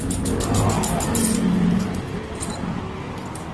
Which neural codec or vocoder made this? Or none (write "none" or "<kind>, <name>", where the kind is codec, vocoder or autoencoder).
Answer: vocoder, BigVGAN v2